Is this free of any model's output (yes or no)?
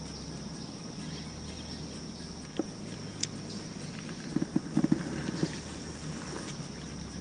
yes